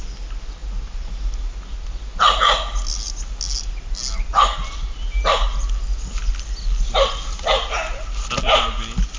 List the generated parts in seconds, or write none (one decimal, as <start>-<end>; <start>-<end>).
none